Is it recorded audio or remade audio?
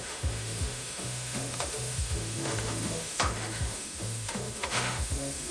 remade